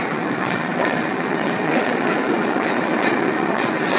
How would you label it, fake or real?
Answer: fake